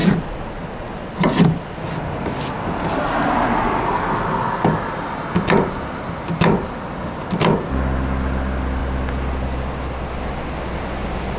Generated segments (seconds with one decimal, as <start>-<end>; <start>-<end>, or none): none